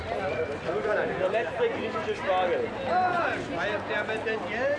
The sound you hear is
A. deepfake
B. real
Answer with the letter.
B